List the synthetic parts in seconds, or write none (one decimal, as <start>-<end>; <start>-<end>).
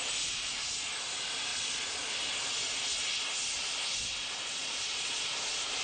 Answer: 1.5-2.1; 4.5-5.3